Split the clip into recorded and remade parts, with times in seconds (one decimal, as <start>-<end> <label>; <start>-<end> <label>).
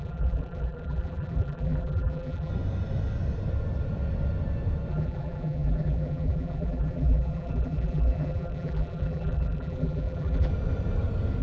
0.0-2.5 remade; 2.5-4.9 recorded; 4.9-10.5 remade; 10.5-11.4 recorded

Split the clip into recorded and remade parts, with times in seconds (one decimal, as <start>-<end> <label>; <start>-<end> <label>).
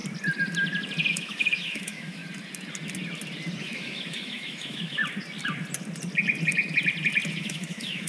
0.0-1.1 recorded; 1.1-2.2 remade; 2.2-3.6 recorded; 3.6-5.0 remade; 5.0-7.3 recorded; 7.3-8.1 remade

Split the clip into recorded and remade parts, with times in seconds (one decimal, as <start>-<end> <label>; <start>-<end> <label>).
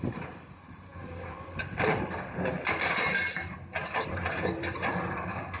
0.0-3.2 remade; 3.2-4.1 recorded; 4.1-5.6 remade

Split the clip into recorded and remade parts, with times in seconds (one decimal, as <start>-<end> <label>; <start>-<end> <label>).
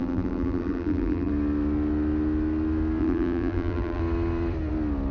0.0-1.3 remade; 1.3-3.0 recorded; 3.0-4.0 remade; 4.0-5.1 recorded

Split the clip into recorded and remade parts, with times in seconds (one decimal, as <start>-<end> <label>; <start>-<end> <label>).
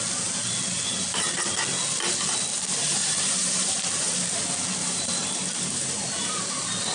0.0-2.8 recorded; 2.8-4.3 remade; 4.3-4.8 recorded; 4.8-6.4 remade; 6.4-6.9 recorded